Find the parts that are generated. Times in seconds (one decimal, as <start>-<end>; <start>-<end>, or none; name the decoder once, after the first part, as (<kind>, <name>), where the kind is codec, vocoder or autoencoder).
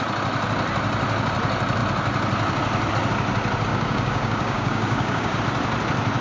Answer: 3.7-5.4 (codec, DAC)